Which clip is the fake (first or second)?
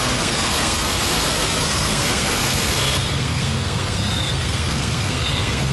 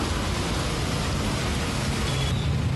first